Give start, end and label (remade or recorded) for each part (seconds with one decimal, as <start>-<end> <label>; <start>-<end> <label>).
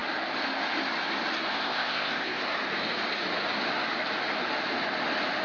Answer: 0.0-1.5 recorded; 1.5-2.4 remade; 2.4-5.4 recorded